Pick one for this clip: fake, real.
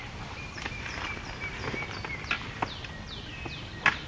real